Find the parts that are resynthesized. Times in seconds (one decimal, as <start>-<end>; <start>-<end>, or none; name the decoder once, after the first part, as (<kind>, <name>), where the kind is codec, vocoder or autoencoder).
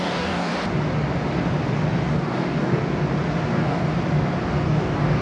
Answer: 0.0-0.5 (codec, DAC); 2.1-2.8; 3.5-3.9; 4.5-5.2